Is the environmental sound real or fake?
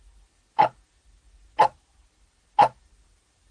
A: real